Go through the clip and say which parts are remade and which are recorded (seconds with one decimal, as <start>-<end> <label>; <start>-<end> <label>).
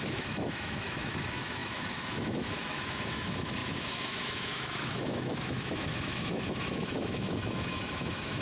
0.0-8.4 remade